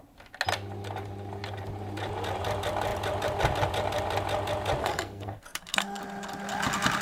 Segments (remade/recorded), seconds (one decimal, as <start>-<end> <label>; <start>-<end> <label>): 0.0-4.8 recorded; 4.8-6.0 remade; 6.0-7.0 recorded